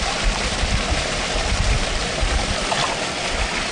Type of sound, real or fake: real